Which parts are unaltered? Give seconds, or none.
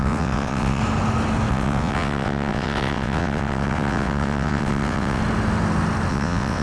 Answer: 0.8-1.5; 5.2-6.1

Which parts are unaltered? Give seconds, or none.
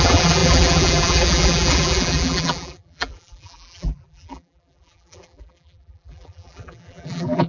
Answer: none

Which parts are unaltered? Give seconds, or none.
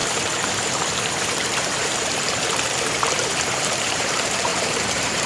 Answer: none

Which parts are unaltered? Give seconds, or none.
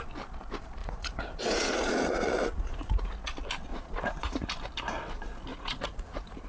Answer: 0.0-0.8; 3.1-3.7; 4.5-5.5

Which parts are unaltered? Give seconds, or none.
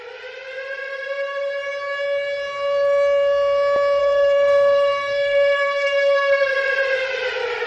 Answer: 0.0-4.0; 6.5-7.7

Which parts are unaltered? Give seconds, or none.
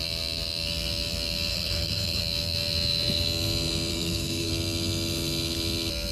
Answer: 0.0-1.5; 2.2-3.9; 4.5-6.1